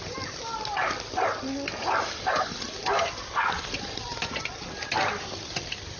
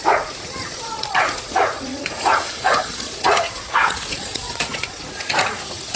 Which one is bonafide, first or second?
first